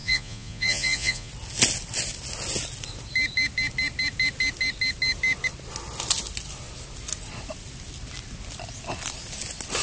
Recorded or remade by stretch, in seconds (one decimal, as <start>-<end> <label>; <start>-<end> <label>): 0.0-1.3 remade; 1.3-9.8 recorded